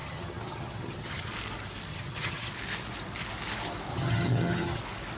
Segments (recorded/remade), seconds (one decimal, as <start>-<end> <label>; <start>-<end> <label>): 0.0-1.3 remade; 1.3-1.9 recorded; 1.9-2.5 remade; 2.5-3.9 recorded; 3.9-4.8 remade; 4.8-5.2 recorded